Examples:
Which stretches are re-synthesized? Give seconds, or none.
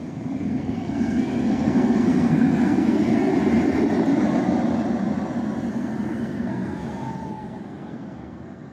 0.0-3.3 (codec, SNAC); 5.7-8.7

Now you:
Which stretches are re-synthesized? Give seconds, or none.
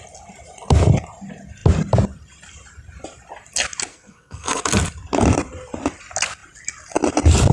3.9-4.6 (codec, SNAC)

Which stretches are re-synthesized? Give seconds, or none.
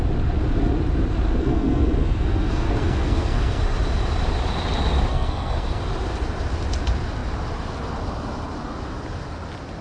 1.4-3.6 (codec, SNAC); 5.1-5.8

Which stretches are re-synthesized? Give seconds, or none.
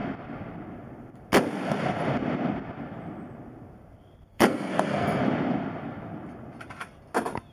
4.3-5.2 (codec, SNAC)